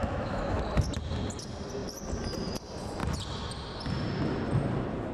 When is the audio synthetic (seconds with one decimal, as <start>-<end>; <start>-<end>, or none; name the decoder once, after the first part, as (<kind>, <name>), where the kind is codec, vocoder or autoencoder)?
0.0-0.6 (autoencoder, DAC-VAE)